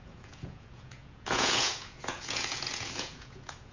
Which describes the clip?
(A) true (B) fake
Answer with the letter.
B